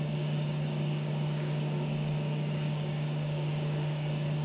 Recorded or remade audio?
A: remade